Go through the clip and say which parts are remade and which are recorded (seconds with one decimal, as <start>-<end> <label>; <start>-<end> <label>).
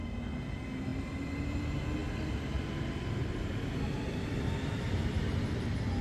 0.0-2.0 recorded; 2.0-5.6 remade; 5.6-6.0 recorded